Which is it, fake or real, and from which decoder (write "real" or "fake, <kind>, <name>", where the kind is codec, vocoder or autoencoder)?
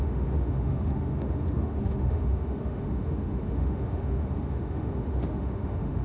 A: fake, autoencoder, DAC-VAE